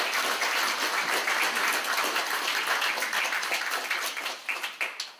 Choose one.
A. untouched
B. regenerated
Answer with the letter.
A